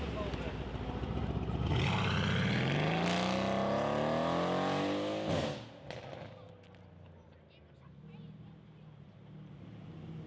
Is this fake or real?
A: real